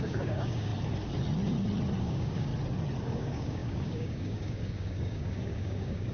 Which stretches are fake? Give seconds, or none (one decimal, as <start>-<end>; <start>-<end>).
0.0-0.7; 2.0-2.5; 3.0-6.1